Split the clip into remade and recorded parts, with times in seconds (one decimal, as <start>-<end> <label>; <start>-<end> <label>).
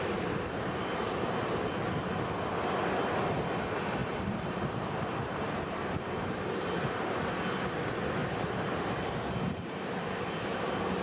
0.0-4.0 recorded; 4.0-7.3 remade; 7.3-8.2 recorded; 8.2-10.1 remade; 10.1-11.0 recorded